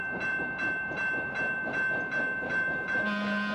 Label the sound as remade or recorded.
remade